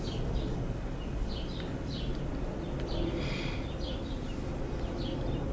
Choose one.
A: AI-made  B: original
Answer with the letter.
B